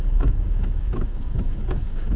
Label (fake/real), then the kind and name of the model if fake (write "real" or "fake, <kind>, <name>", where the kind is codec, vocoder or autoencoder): fake, codec, DAC